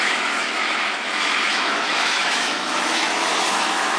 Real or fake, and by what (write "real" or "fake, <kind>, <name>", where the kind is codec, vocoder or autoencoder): fake, autoencoder, DAC-VAE